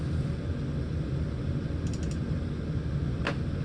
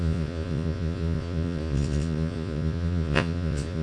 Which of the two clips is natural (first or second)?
first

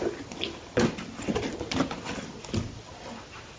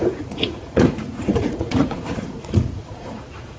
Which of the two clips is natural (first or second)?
first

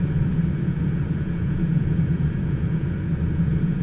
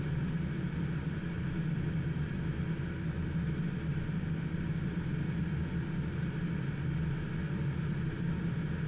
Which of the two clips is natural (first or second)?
second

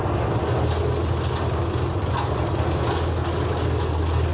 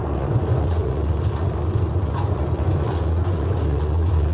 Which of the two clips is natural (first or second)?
first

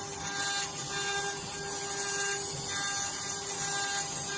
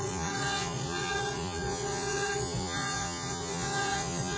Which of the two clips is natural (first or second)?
first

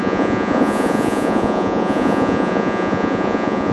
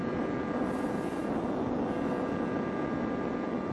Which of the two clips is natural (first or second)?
second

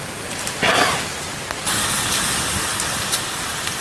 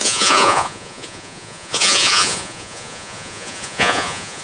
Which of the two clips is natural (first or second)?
first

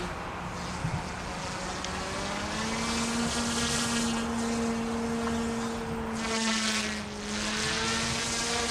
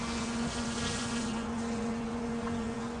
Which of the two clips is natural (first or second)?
first